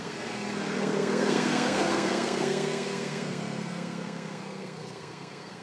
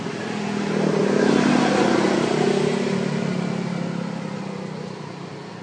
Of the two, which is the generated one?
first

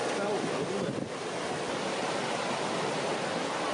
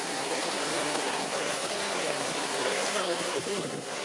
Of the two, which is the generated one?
second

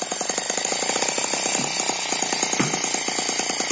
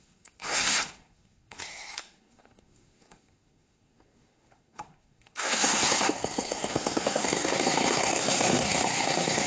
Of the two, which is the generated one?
second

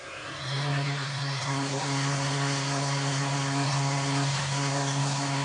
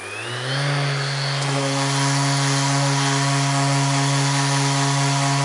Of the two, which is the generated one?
first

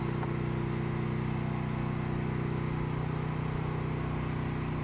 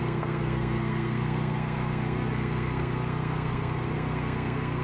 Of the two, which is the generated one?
second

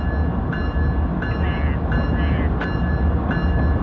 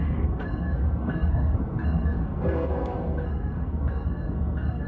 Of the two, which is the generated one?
second